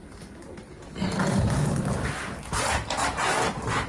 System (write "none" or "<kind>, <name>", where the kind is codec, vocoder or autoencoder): none